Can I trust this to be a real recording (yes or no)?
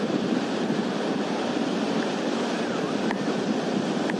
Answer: no